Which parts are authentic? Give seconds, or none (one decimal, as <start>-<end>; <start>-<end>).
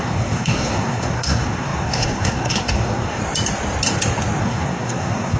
3.2-4.4